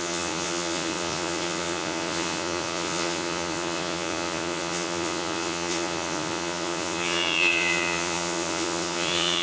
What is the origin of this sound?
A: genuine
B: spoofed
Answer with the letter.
B